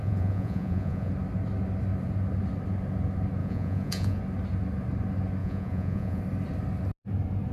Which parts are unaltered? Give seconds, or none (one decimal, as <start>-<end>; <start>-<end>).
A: 1.1-3.4; 4.2-5.4; 6.2-7.5